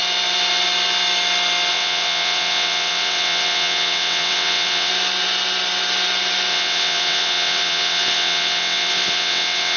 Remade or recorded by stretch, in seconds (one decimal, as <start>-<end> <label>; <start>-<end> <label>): 0.0-1.7 recorded; 1.7-4.9 remade; 4.9-6.5 recorded; 6.5-9.8 remade